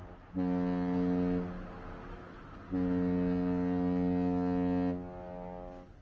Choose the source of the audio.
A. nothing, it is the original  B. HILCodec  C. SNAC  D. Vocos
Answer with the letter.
A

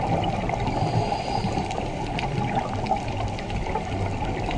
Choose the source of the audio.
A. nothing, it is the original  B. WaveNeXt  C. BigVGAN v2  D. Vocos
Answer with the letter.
A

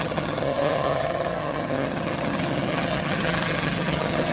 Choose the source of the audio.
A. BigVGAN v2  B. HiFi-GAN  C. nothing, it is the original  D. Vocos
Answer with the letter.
B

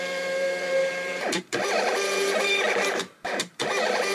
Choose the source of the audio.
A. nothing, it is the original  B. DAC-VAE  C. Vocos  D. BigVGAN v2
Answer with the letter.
D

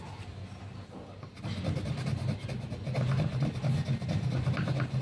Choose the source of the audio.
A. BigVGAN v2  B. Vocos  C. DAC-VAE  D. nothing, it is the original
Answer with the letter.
D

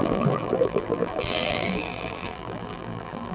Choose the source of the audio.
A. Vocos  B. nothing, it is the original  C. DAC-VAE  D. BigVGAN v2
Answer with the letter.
D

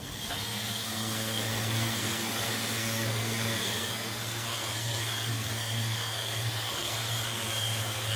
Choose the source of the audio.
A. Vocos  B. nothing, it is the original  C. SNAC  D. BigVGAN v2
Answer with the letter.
C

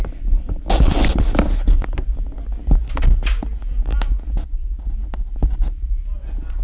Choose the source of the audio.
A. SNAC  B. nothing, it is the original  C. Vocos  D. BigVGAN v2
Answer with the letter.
B